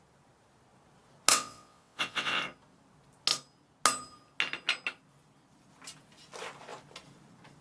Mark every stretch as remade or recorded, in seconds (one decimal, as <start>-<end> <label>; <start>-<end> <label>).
0.0-1.3 recorded; 1.3-2.4 remade; 2.4-7.6 recorded